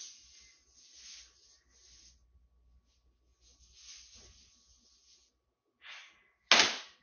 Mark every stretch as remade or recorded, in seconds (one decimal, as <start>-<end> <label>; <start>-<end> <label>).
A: 0.0-7.0 recorded